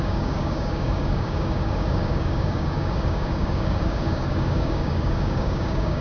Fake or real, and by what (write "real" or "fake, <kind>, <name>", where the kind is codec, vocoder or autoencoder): fake, codec, DAC